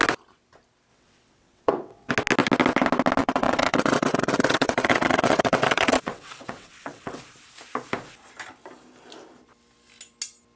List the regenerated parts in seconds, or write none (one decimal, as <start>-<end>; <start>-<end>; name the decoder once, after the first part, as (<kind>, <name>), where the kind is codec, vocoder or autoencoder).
0.9-2.1 (vocoder, WaveNeXt); 3.2-7.2